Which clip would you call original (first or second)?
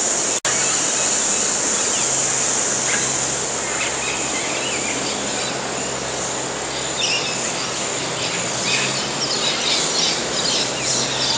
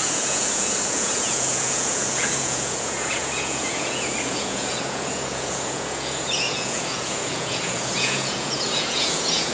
first